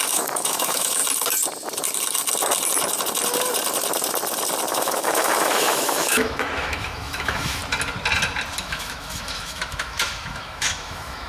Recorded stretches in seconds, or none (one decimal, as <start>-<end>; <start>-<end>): 1.0-4.7; 7.6-8.6